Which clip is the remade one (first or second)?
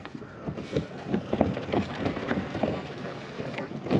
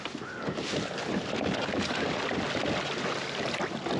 first